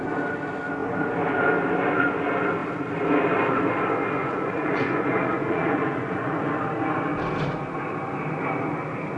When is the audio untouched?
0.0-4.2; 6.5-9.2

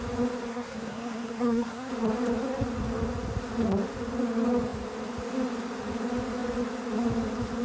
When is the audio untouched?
0.0-0.5; 1.9-7.6